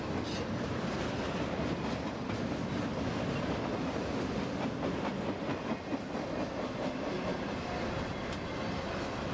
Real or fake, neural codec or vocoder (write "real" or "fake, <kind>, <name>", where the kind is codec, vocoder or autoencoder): real